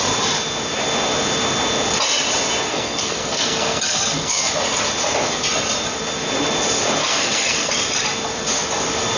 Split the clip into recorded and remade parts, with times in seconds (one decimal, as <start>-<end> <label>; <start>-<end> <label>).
0.0-2.7 recorded; 2.7-4.5 remade; 4.5-7.0 recorded; 7.0-7.7 remade; 7.7-9.2 recorded